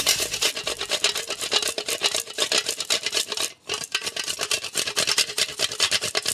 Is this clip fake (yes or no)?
yes